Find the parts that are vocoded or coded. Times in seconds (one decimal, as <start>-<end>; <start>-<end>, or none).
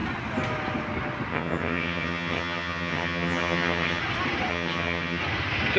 1.3-4.0; 4.5-5.2